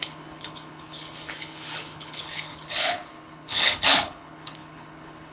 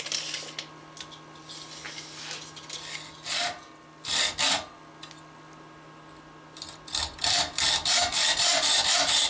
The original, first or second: second